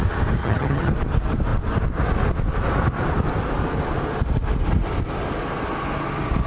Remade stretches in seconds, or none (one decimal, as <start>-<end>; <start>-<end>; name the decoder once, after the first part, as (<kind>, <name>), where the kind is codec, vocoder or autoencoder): 0.4-0.9 (vocoder, HiFi-GAN)